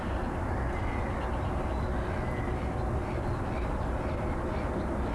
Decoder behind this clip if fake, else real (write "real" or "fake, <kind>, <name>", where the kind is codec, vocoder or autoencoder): real